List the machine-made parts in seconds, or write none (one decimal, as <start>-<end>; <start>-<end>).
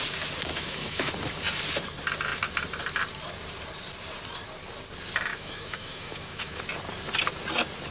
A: 0.5-1.1; 5.3-6.6